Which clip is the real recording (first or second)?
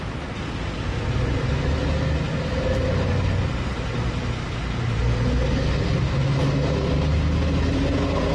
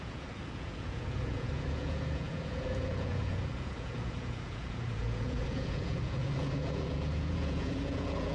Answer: first